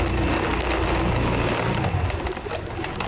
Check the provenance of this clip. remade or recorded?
recorded